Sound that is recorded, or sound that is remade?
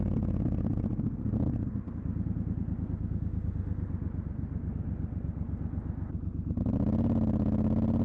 recorded